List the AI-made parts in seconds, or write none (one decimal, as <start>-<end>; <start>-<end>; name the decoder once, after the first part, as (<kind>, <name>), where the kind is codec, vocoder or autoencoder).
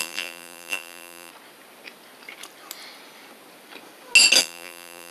0.0-1.3 (vocoder, BigVGAN v2); 4.4-5.1